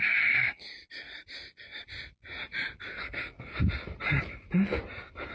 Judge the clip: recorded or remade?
recorded